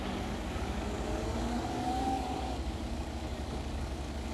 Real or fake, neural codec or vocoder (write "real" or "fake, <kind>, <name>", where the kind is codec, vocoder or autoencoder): fake, codec, DAC